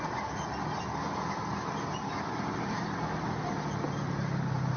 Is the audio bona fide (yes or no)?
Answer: yes